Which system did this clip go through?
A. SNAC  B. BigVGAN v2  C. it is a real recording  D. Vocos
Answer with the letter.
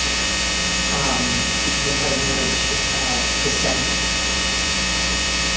D